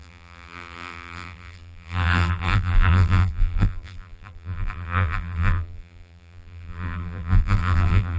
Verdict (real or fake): fake